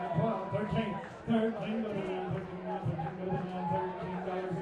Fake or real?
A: real